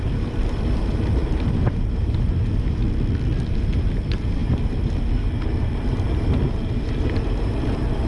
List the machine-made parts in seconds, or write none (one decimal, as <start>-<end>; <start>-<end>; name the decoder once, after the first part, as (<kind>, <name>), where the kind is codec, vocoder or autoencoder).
0.0-2.8 (vocoder, BigVGAN v2); 3.5-8.1